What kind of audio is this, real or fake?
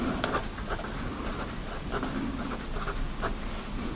real